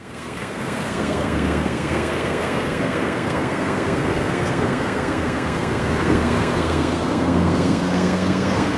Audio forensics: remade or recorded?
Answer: remade